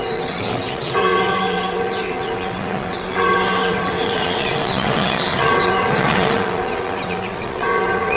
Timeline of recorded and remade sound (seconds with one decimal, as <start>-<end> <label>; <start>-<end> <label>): 0.0-8.2 remade